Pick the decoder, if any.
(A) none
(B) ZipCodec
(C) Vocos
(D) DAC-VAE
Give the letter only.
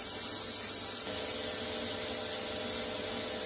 A